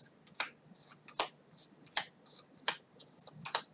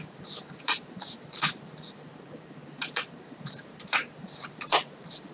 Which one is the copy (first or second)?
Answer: second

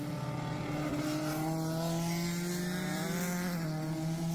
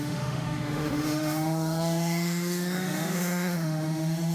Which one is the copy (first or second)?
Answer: second